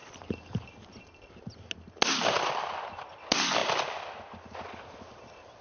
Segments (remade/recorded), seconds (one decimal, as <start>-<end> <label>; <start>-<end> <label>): 0.0-5.6 recorded